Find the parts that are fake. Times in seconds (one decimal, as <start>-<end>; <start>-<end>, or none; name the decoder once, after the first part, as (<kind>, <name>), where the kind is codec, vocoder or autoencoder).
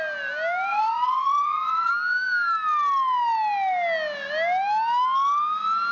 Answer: 0.7-1.9 (vocoder, Vocos)